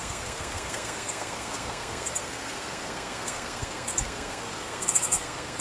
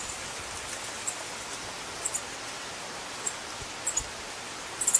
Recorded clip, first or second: second